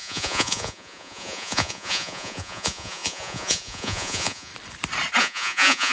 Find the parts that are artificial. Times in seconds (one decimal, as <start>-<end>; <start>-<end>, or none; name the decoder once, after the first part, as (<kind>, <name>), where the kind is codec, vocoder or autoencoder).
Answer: 0.0-4.5 (vocoder, Vocos); 5.2-5.9